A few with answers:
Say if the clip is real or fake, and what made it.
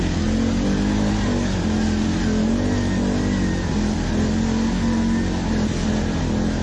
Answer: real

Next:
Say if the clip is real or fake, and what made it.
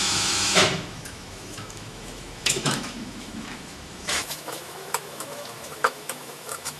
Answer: fake, autoencoder, DAC-VAE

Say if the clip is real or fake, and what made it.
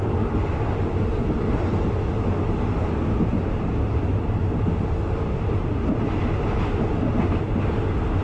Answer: real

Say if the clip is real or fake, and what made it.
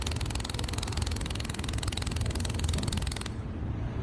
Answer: real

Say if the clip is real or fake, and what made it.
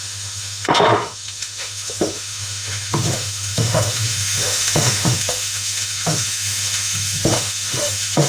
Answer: fake, autoencoder, DAC-VAE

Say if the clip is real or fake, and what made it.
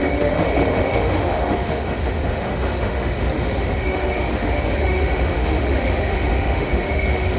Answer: fake, autoencoder, DAC-VAE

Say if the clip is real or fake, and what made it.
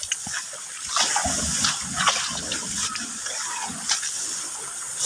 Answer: real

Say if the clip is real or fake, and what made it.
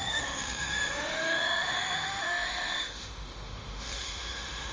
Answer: fake, autoencoder, DAC-VAE